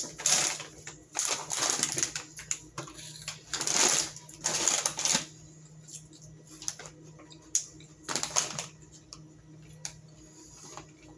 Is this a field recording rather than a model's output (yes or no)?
yes